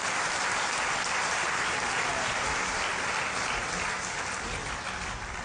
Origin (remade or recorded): recorded